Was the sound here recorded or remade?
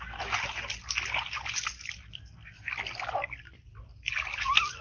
recorded